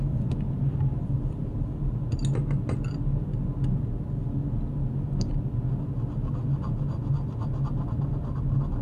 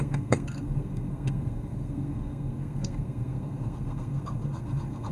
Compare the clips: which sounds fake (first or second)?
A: second